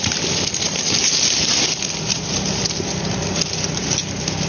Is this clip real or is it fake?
fake